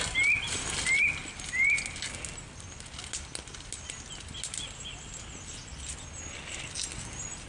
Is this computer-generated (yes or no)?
no